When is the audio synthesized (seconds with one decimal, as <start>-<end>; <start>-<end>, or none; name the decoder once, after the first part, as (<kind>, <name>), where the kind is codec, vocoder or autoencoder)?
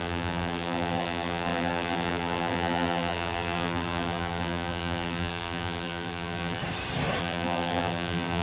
0.0-6.6 (vocoder, BigVGAN v2); 7.2-8.4